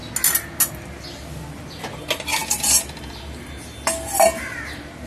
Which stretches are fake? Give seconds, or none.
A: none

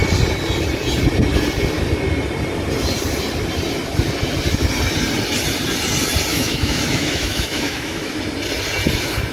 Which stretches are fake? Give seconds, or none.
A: 6.3-8.2 (autoencoder, DAC-VAE)

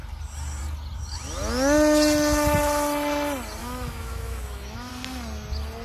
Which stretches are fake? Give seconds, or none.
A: 3.6-4.9 (autoencoder, DAC-VAE)

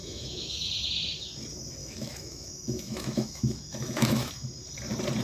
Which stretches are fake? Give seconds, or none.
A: 0.0-0.7 (autoencoder, DAC-VAE); 1.8-4.3